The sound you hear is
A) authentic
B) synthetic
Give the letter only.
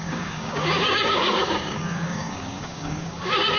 B